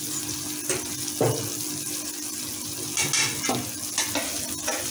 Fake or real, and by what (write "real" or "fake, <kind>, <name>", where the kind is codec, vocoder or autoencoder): real